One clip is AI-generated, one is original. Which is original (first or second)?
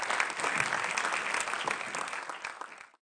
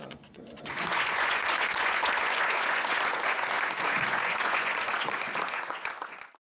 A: first